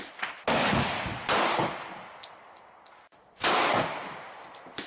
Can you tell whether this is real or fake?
real